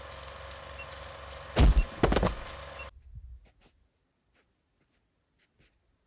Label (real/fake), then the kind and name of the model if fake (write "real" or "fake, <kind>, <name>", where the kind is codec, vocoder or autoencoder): real